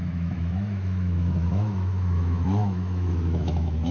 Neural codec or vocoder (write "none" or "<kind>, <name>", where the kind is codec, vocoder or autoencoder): autoencoder, DAC-VAE